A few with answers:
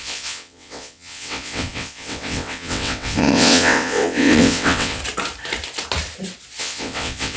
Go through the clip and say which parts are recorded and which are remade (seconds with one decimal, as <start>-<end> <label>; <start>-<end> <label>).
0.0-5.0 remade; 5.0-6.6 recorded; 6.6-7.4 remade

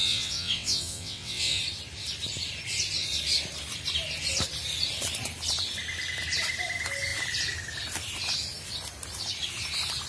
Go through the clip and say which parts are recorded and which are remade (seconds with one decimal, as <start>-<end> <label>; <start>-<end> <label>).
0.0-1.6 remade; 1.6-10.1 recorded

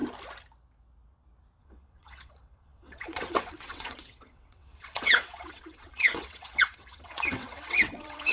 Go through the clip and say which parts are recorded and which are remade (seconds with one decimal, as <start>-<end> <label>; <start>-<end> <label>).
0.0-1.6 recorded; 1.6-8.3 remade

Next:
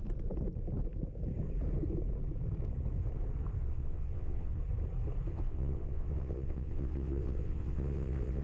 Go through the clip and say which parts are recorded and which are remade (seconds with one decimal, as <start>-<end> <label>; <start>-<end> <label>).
0.0-3.6 recorded; 3.6-4.6 remade; 4.6-5.3 recorded; 5.3-8.4 remade